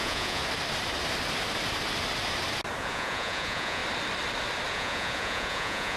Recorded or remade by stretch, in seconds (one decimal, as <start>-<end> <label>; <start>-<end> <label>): 0.0-0.4 remade; 0.4-2.8 recorded; 2.8-3.8 remade; 3.8-4.7 recorded; 4.7-6.0 remade